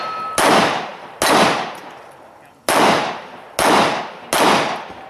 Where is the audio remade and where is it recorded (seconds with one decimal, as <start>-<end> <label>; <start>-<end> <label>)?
0.0-5.1 recorded